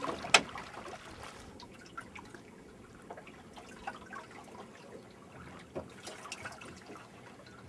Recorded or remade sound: recorded